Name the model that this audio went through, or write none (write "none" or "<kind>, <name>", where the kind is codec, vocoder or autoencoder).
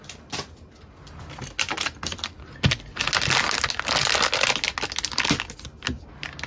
none